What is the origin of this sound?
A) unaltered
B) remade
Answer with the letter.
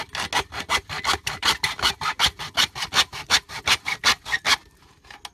A